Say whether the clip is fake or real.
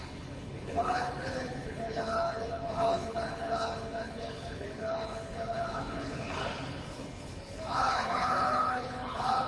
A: fake